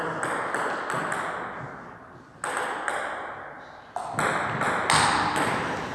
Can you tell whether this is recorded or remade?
recorded